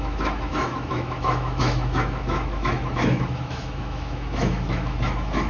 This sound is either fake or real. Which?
fake